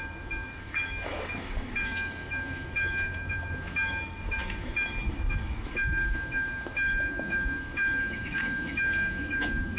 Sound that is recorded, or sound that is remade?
remade